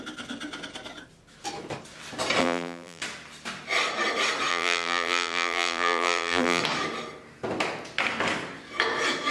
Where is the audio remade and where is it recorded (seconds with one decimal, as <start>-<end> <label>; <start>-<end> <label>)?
0.0-2.4 recorded; 2.4-3.0 remade; 3.0-4.5 recorded; 4.5-6.6 remade; 6.6-9.3 recorded